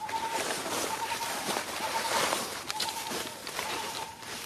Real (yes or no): no